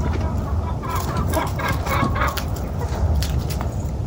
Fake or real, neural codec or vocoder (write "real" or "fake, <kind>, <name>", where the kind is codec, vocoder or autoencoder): fake, vocoder, BigVGAN v2